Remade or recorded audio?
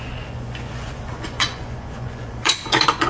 remade